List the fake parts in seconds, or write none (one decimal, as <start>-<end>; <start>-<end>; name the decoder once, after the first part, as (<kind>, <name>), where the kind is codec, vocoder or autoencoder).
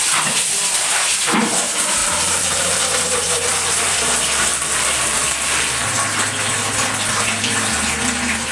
2.0-2.8 (vocoder, BigVGAN v2); 4.5-5.9